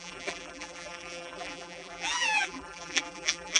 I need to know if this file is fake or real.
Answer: fake